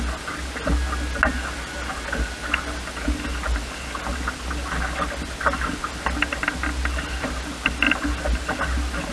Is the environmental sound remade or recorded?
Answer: recorded